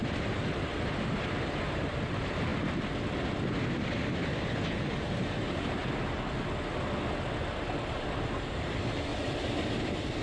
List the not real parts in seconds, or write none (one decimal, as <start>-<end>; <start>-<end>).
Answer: 0.0-2.5; 4.2-5.8; 7.9-9.1; 9.6-10.2